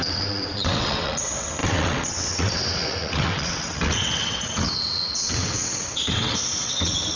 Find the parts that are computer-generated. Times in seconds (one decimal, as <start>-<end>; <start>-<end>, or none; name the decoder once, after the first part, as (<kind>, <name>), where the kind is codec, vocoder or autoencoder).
0.0-7.2 (vocoder, WaveNeXt)